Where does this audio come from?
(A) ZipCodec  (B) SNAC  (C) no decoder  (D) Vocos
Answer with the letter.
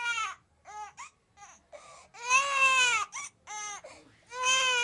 C